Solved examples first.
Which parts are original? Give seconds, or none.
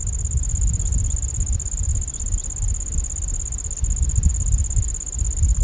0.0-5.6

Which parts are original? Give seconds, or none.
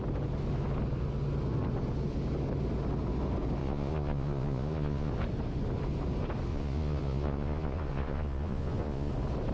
0.0-3.6; 5.1-6.5; 9.1-9.5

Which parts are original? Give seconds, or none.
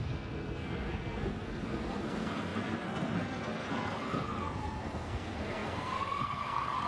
none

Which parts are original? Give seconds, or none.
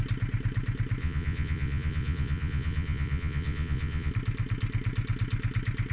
0.0-1.0; 4.1-5.9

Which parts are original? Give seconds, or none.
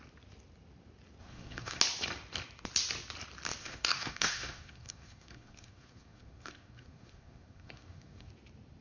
0.0-1.2; 1.8-3.6; 8.3-8.8